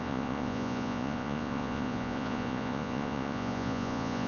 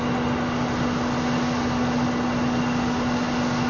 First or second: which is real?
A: second